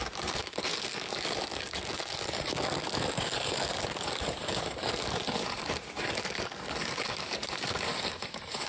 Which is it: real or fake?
fake